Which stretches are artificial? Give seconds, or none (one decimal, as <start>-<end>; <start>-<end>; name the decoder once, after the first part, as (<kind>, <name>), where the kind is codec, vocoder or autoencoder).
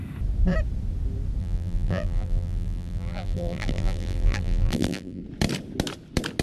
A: 1.4-5.2 (vocoder, BigVGAN v2)